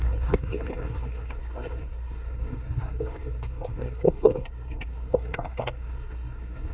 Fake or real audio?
fake